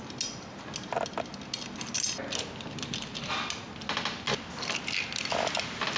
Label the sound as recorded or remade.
recorded